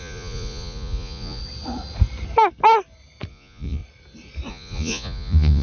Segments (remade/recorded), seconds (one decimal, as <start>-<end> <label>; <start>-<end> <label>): 0.0-1.4 remade; 1.4-3.3 recorded; 3.3-3.8 remade; 3.8-4.5 recorded; 4.5-5.6 remade